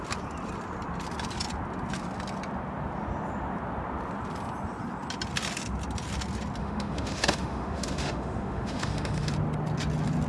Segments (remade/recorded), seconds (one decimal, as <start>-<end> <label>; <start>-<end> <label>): 0.0-6.6 recorded; 6.6-9.3 remade; 9.3-10.3 recorded

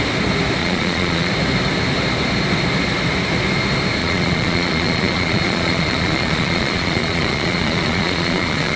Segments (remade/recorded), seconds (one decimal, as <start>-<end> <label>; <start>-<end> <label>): 0.0-0.6 recorded; 0.6-1.3 remade; 1.3-4.0 recorded; 4.0-8.8 remade

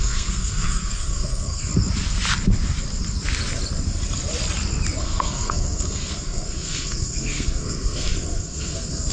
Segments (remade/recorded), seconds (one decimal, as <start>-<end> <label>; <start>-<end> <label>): 0.0-1.7 remade; 1.7-5.0 recorded; 5.0-9.1 remade